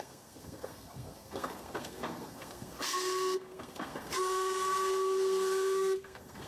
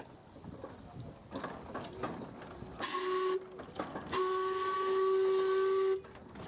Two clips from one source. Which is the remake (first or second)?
first